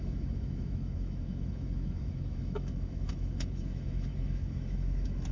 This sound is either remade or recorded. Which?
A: remade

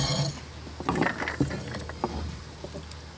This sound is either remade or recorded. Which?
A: recorded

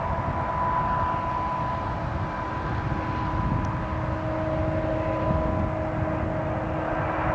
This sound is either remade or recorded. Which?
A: recorded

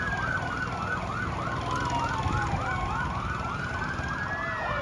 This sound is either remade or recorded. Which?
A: recorded